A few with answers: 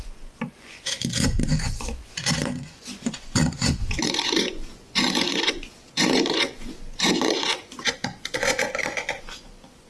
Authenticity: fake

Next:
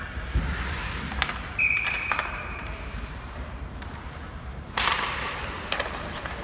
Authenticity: fake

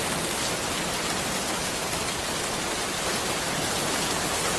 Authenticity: real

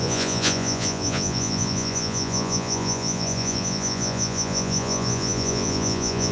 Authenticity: fake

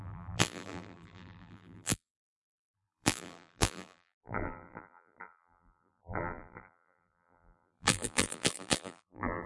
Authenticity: fake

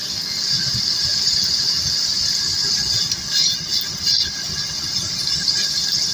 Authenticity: real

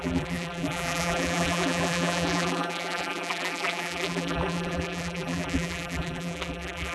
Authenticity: fake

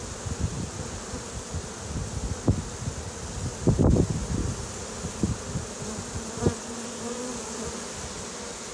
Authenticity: real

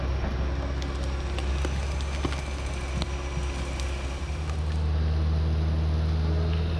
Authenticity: real